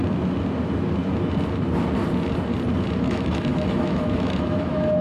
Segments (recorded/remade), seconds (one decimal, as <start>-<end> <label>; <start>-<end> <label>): 0.0-3.0 recorded; 3.0-5.0 remade